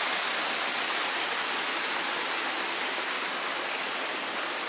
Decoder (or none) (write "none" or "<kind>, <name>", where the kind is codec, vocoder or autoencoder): none